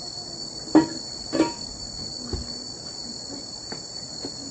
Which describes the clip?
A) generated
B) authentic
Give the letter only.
B